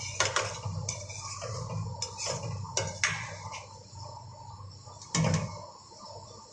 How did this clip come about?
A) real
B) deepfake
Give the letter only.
A